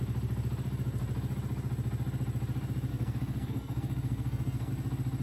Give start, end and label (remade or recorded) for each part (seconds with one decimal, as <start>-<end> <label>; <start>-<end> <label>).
0.0-2.9 recorded; 2.9-4.7 remade; 4.7-5.2 recorded